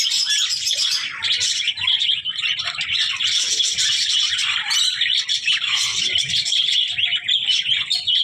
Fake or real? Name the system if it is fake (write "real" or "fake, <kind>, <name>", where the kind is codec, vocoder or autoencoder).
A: real